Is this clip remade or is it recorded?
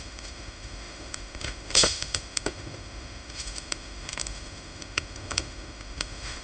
remade